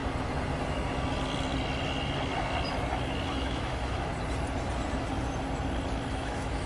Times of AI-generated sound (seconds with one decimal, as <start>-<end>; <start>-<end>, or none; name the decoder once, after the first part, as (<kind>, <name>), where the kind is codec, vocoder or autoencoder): 3.3-4.1 (autoencoder, DAC-VAE); 6.1-6.7